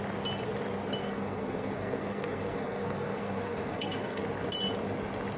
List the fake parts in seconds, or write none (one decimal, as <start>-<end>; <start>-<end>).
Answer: 1.0-4.2